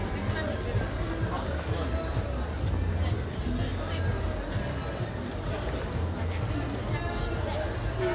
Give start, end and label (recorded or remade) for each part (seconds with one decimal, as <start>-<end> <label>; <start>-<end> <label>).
0.0-8.1 recorded